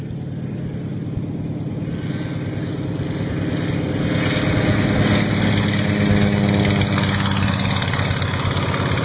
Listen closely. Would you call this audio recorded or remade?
recorded